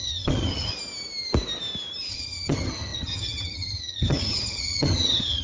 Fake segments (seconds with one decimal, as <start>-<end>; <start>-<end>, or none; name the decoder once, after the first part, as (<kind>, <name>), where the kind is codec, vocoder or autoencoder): 0.0-0.7 (vocoder, HiFi-GAN); 2.1-5.4